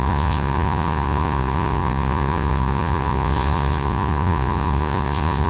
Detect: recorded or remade remade